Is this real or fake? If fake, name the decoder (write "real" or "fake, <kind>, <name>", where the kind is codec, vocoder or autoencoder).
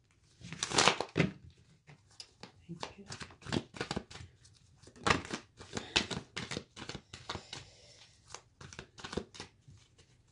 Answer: real